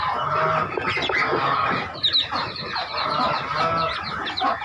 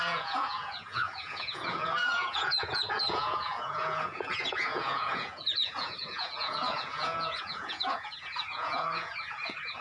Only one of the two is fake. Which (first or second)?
second